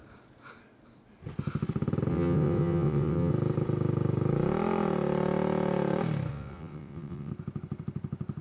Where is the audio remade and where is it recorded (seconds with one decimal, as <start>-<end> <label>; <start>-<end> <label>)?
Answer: 0.0-2.1 recorded; 2.1-3.3 remade; 3.3-6.3 recorded; 6.3-7.3 remade; 7.3-8.4 recorded